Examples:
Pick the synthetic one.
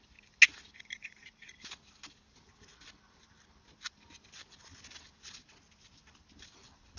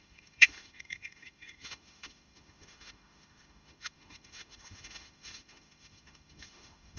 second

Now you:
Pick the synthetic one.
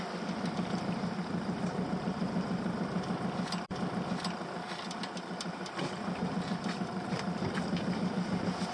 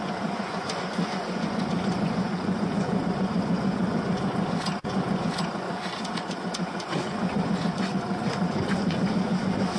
second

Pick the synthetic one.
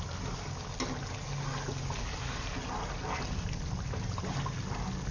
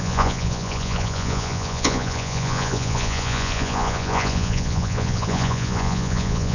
second